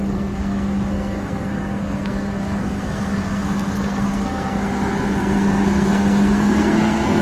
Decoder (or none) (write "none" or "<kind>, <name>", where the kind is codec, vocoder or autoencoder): codec, SNAC